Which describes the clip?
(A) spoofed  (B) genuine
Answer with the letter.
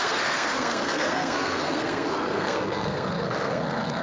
A